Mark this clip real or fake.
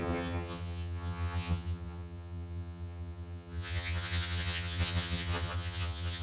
fake